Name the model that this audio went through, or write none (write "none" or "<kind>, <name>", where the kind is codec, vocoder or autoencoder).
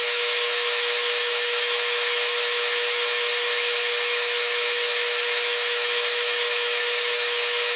autoencoder, DAC-VAE